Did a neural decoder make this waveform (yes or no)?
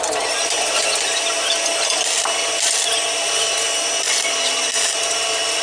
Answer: no